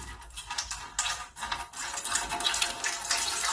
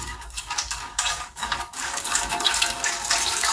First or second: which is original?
first